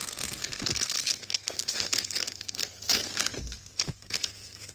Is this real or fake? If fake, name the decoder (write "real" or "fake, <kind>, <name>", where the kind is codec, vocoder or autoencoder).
fake, codec, SNAC